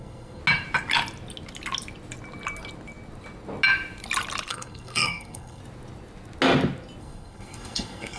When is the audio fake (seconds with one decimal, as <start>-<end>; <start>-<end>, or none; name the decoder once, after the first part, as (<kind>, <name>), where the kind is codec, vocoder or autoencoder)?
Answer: 0.0-0.4 (codec, SNAC); 4.5-5.6; 7.0-8.2